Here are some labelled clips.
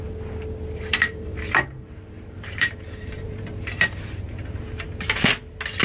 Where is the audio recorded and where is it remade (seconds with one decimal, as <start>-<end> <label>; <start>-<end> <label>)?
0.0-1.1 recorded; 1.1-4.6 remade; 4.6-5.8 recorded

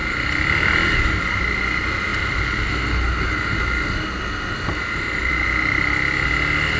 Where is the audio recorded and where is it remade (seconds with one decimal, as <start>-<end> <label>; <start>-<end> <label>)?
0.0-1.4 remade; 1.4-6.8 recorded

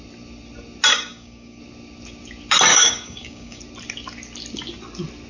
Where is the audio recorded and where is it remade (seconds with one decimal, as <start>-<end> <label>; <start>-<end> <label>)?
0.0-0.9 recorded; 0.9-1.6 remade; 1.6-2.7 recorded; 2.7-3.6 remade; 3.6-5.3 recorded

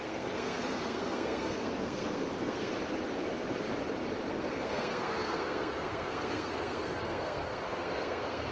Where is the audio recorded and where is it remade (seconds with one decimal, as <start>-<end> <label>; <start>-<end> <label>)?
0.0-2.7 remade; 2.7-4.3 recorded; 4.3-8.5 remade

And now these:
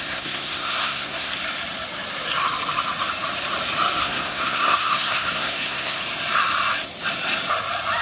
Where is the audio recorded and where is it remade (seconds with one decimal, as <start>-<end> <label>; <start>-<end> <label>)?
0.0-1.3 remade; 1.3-4.0 recorded; 4.0-6.0 remade; 6.0-8.0 recorded

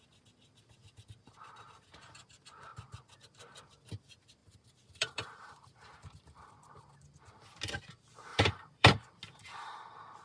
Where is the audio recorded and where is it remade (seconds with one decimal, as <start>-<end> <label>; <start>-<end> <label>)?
0.0-4.4 recorded; 4.4-6.5 remade; 6.5-8.3 recorded; 8.3-9.1 remade; 9.1-10.2 recorded

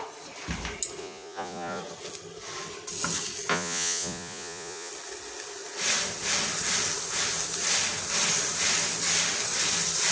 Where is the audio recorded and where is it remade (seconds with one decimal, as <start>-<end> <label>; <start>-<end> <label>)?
0.0-1.0 recorded; 1.0-1.8 remade; 1.8-3.5 recorded; 3.5-4.9 remade; 4.9-10.1 recorded